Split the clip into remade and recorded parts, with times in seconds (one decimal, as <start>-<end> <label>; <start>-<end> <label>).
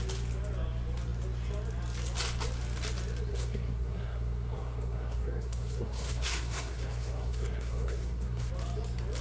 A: 0.0-3.3 recorded; 3.3-8.5 remade; 8.5-9.2 recorded